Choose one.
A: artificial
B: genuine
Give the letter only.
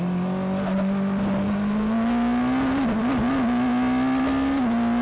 B